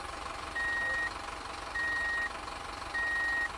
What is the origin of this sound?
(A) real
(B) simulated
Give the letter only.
A